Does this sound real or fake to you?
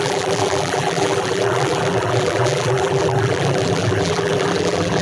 fake